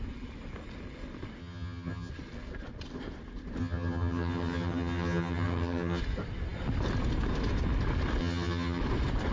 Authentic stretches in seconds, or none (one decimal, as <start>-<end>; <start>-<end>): 0.0-1.4; 2.1-3.6; 6.0-8.2; 8.8-9.3